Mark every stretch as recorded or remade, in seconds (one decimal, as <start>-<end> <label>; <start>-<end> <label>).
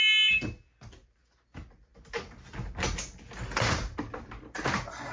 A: 0.0-5.1 recorded